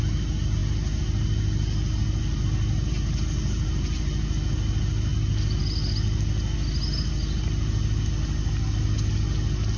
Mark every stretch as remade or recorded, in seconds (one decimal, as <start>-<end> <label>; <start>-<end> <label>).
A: 0.0-9.8 recorded